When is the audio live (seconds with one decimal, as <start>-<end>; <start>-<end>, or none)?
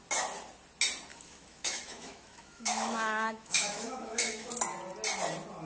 0.0-1.1; 4.5-5.7